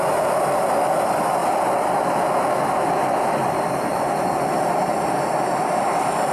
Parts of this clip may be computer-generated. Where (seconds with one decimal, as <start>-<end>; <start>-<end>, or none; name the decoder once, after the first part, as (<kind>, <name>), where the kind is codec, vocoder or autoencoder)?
none